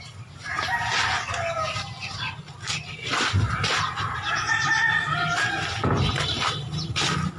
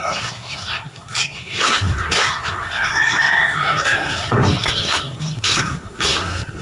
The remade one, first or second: second